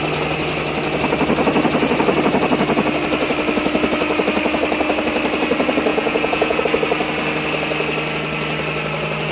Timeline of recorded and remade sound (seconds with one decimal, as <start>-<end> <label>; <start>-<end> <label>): 0.0-5.9 recorded; 5.9-6.6 remade; 6.6-9.3 recorded